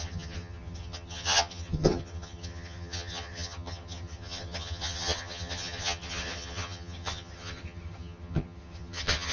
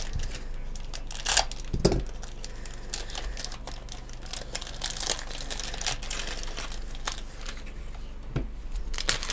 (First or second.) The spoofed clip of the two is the first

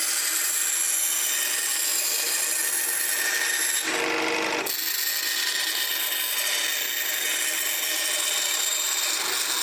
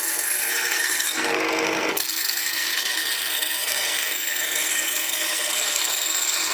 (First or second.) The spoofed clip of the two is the second